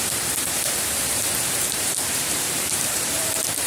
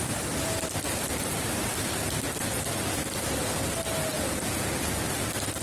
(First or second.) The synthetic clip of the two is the first